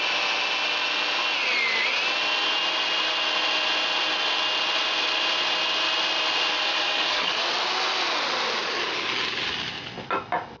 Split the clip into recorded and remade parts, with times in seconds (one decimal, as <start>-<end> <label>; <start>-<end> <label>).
0.0-6.7 recorded; 6.7-7.5 remade; 7.5-10.6 recorded